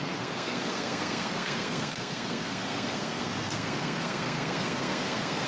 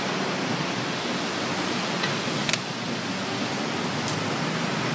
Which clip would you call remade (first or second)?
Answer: first